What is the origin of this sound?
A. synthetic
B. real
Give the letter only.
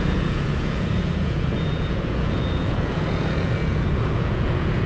A